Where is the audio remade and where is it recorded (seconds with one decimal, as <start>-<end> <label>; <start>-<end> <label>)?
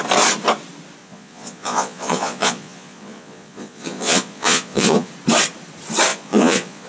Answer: 0.0-1.0 recorded; 1.0-5.1 remade; 5.1-6.1 recorded; 6.1-6.9 remade